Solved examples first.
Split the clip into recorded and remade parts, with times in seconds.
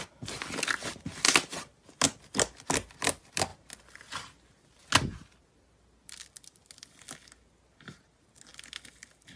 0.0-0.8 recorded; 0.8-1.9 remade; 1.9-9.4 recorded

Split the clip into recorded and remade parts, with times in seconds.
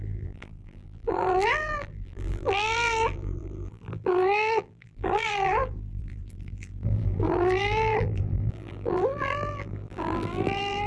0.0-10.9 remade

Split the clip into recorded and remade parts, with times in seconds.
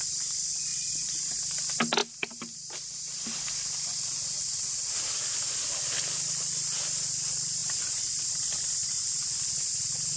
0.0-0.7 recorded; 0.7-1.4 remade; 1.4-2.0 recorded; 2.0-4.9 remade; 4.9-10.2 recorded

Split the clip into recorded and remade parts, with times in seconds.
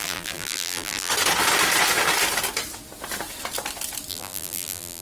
0.0-1.1 remade; 1.1-4.1 recorded; 4.1-5.0 remade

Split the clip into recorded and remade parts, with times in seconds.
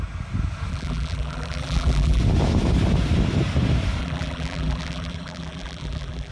0.0-0.7 recorded; 0.7-2.2 remade; 2.2-4.0 recorded; 4.0-6.3 remade